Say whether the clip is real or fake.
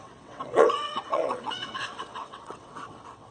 fake